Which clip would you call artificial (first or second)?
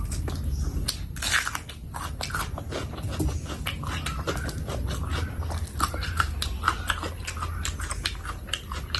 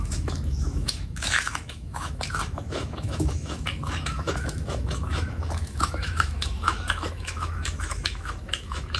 second